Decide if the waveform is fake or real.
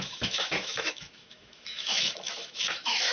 fake